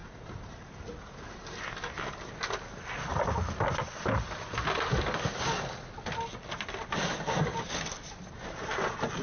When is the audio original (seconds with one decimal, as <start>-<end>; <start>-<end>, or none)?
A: 0.0-9.2